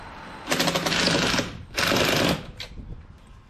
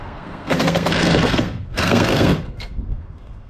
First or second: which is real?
first